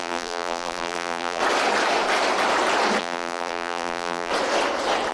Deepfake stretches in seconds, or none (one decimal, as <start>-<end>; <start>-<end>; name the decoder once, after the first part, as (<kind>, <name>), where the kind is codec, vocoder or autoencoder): 0.0-1.4 (vocoder, BigVGAN v2); 3.0-4.3